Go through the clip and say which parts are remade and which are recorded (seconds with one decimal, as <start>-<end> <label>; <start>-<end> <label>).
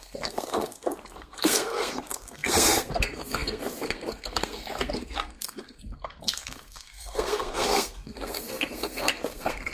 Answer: 0.0-9.7 remade